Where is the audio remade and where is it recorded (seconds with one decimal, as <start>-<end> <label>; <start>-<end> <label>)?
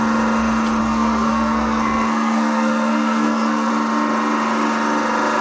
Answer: 0.0-0.8 recorded; 0.8-3.7 remade; 3.7-5.4 recorded